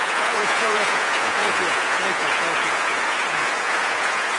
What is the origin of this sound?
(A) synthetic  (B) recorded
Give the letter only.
A